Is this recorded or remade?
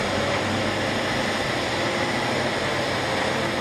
recorded